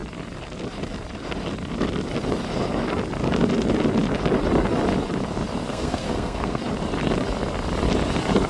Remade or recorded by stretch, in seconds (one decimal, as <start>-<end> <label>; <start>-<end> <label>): 0.0-5.7 recorded; 5.7-6.6 remade; 6.6-8.5 recorded